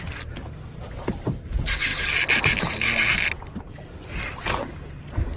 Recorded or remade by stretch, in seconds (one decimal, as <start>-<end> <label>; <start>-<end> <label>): 0.0-5.4 recorded